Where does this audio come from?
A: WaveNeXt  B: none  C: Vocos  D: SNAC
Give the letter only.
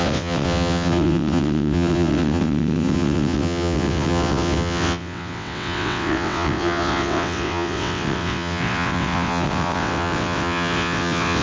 A